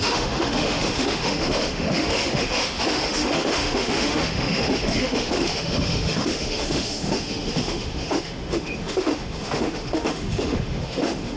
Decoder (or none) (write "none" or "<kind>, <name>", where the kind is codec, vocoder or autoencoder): autoencoder, DAC-VAE